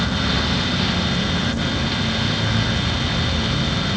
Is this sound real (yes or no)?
yes